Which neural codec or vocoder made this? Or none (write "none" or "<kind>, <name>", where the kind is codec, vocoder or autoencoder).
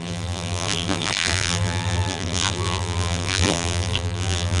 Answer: vocoder, BigVGAN v2